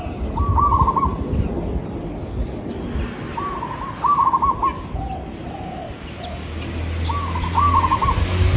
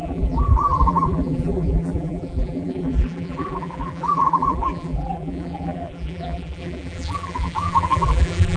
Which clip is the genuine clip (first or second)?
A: first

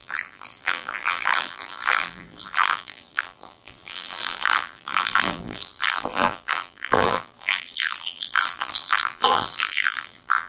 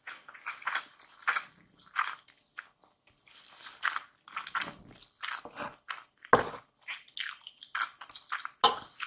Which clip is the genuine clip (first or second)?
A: second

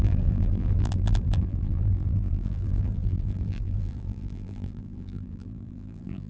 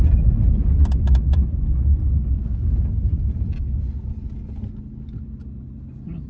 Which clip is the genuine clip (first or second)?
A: second